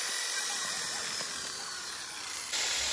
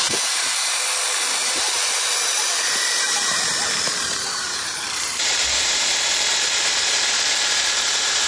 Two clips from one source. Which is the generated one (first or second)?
second